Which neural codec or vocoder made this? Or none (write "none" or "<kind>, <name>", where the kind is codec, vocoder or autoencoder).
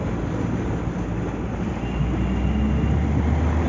none